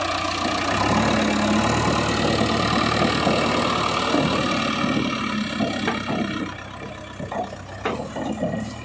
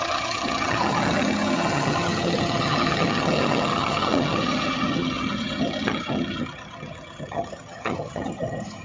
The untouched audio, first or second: first